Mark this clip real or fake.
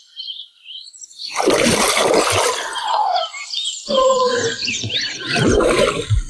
fake